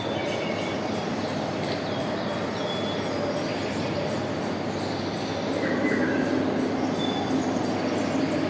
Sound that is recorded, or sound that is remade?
recorded